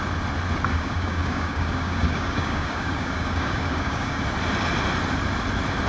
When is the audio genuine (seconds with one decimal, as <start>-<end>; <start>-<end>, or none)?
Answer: 0.0-0.7; 4.2-5.9